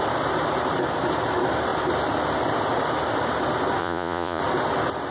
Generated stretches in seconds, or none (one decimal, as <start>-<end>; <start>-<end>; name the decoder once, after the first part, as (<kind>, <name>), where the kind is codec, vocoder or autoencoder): 3.8-4.4 (vocoder, Vocos)

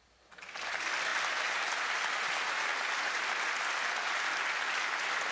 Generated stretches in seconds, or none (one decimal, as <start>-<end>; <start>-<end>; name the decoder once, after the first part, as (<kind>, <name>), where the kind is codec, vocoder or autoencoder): none

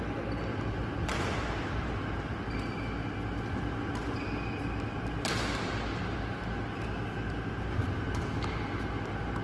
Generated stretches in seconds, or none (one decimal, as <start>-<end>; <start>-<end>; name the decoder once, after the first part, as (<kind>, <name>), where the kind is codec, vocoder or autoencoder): none

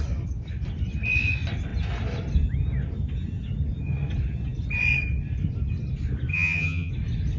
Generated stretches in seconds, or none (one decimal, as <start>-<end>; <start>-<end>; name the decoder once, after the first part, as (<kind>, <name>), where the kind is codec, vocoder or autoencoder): 6.3-6.9 (vocoder, HiFi-GAN)